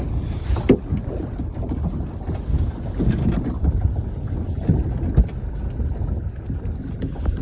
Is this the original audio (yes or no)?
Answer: yes